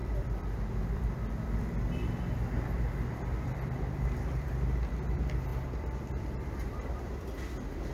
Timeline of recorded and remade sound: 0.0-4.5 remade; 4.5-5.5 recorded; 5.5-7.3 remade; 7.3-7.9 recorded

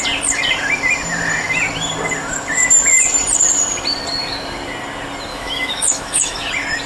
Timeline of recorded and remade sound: 0.0-5.3 recorded; 5.3-6.5 remade; 6.5-6.9 recorded

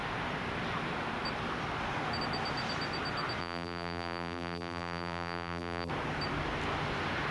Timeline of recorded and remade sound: 0.0-3.4 recorded; 3.4-5.9 remade; 5.9-7.3 recorded

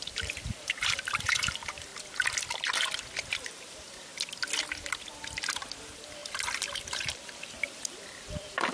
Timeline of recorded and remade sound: 0.0-1.9 remade; 1.9-3.2 recorded; 3.2-4.1 remade; 4.1-5.8 recorded; 5.8-8.7 remade